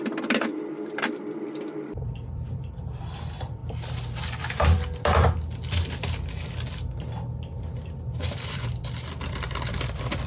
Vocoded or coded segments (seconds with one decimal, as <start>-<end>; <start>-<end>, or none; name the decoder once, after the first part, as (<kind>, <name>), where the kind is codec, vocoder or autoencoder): 0.0-3.6 (vocoder, BigVGAN v2); 8.2-10.3